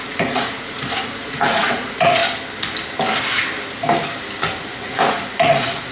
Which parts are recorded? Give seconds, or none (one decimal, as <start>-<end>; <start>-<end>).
2.2-4.6